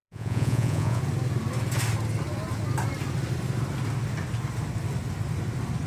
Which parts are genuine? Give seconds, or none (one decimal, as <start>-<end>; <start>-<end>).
1.0-5.9